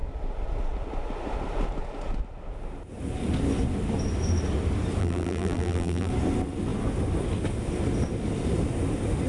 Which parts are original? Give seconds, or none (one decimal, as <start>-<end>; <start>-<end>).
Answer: 0.0-5.0; 6.1-9.3